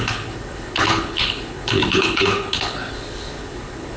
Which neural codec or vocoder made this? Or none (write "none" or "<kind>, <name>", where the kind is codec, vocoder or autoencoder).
codec, HILCodec